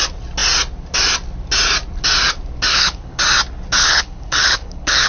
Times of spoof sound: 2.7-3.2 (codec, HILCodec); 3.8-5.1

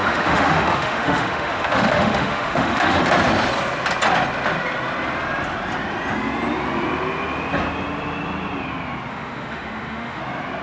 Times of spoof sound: 0.0-3.0 (autoencoder, DAC-VAE); 9.1-10.2

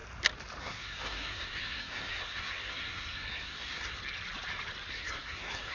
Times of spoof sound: 0.6-4.0 (codec, SNAC); 4.9-5.7